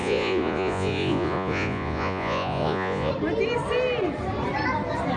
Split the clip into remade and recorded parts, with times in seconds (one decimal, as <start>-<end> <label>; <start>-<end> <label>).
0.0-3.1 remade; 3.1-5.2 recorded